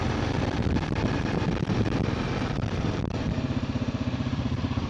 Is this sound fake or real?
fake